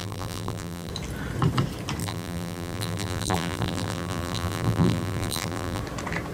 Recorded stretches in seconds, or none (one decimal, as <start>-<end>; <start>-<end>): 0.9-2.0; 5.8-6.3